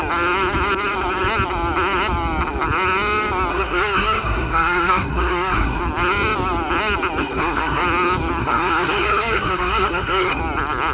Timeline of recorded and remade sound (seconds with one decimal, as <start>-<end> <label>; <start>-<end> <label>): 0.0-3.5 recorded; 3.5-5.8 remade; 5.8-7.2 recorded; 7.2-7.8 remade; 7.8-8.4 recorded; 8.4-10.4 remade; 10.4-10.9 recorded